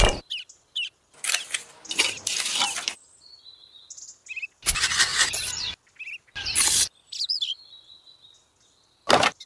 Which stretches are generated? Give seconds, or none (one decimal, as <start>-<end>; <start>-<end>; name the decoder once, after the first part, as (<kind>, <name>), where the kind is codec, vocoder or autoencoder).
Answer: none